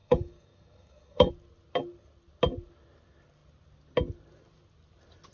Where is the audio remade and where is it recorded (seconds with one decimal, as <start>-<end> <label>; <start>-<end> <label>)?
0.0-1.3 remade; 1.3-5.3 recorded